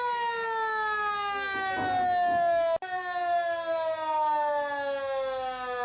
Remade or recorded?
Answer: recorded